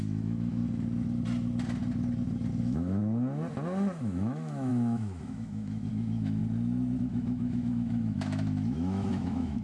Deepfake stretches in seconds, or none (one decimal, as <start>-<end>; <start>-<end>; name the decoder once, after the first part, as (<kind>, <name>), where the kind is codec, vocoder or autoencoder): 0.0-0.6 (autoencoder, DAC-VAE); 2.6-3.0; 4.0-6.4; 7.0-9.6